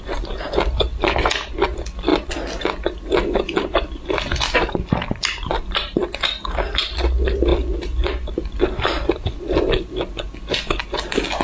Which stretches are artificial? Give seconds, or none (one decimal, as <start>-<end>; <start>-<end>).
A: none